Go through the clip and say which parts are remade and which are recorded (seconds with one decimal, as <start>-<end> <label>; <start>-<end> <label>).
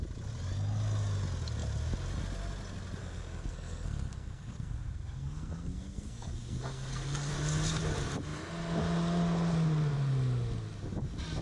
0.0-3.0 recorded; 3.0-7.3 remade; 7.3-11.4 recorded